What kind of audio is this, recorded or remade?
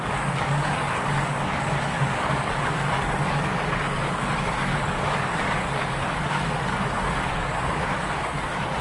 remade